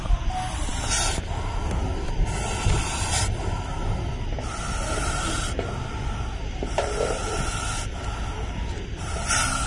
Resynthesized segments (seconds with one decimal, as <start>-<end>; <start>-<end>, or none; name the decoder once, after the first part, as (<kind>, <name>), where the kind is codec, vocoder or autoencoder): none